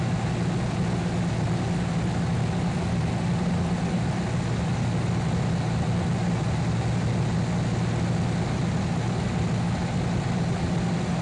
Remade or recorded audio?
recorded